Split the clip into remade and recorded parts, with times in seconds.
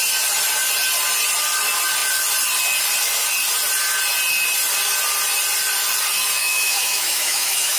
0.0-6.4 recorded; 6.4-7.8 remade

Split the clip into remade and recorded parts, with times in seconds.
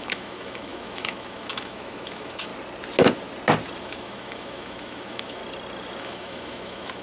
0.0-2.5 remade; 2.5-3.8 recorded; 3.8-5.4 remade; 5.4-6.0 recorded; 6.0-7.0 remade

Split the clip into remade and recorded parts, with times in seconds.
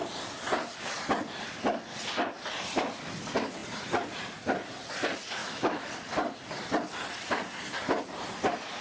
0.0-5.4 recorded; 5.4-5.9 remade; 5.9-8.8 recorded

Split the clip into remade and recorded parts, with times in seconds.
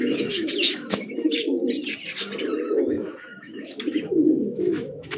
0.0-1.6 remade; 1.6-2.6 recorded; 2.6-5.2 remade